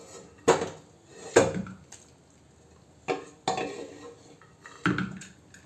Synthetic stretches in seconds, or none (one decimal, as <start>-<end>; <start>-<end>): none